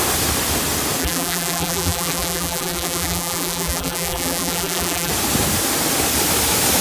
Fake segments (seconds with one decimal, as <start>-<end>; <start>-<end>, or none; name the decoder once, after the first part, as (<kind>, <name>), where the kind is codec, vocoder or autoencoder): 1.0-5.1 (vocoder, BigVGAN v2)